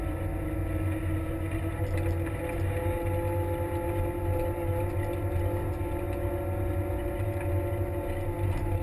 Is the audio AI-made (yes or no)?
no